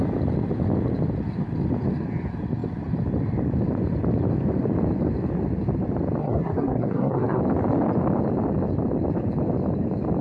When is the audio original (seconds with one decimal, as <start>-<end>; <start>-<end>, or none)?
0.0-6.2; 7.4-10.2